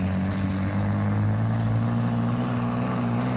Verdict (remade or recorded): recorded